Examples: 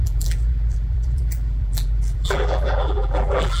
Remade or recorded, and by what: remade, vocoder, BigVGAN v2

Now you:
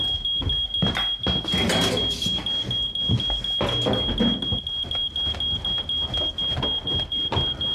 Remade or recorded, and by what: recorded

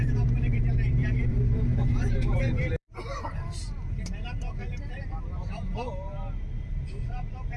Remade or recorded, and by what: remade, vocoder, BigVGAN v2